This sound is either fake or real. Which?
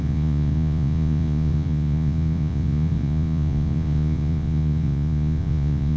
fake